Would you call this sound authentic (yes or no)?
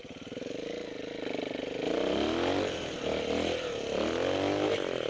yes